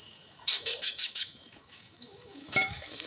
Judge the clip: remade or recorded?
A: remade